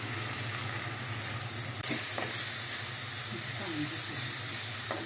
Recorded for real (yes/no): yes